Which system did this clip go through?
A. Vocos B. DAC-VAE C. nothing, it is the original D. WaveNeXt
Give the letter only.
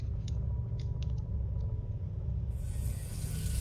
A